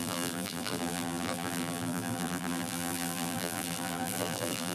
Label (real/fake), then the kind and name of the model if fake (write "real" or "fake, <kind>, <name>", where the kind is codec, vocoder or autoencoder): fake, vocoder, BigVGAN v2